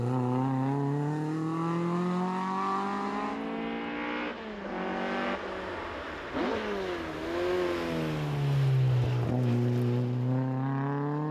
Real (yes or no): yes